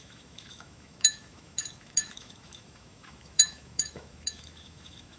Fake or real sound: fake